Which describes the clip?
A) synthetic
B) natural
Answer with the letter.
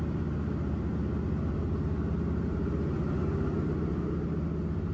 B